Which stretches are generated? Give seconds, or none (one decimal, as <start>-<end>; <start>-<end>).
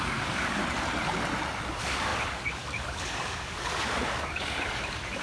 0.0-0.6; 1.6-5.2